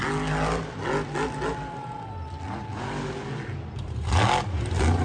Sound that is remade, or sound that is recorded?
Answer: recorded